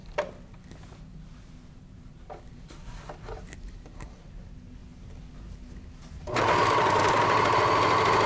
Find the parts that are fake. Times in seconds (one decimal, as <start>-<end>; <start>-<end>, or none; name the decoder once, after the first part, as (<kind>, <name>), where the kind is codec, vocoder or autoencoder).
none